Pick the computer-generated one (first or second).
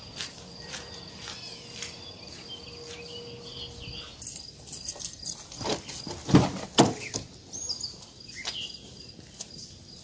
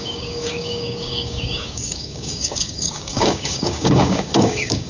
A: second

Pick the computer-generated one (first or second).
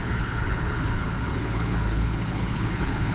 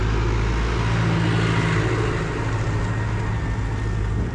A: first